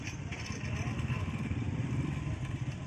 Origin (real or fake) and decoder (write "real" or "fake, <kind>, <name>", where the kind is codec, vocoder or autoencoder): fake, vocoder, BigVGAN v2